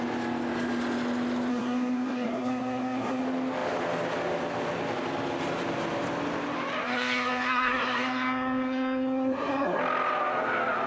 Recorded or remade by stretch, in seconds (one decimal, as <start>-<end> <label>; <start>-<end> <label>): 0.0-1.5 recorded; 1.5-3.2 remade; 3.2-6.8 recorded; 6.8-9.8 remade; 9.8-10.9 recorded